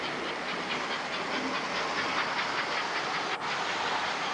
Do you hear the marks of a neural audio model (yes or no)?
no